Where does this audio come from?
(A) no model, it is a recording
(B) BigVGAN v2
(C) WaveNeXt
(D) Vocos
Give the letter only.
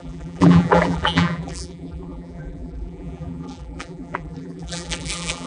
B